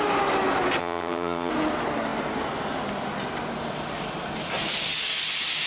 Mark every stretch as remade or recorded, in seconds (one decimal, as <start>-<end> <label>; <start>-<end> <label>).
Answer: 0.0-0.8 recorded; 0.8-1.5 remade; 1.5-5.7 recorded